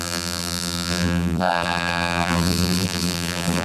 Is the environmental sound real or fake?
fake